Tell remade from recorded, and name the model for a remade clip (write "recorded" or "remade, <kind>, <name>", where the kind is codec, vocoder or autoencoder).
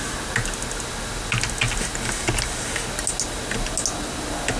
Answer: recorded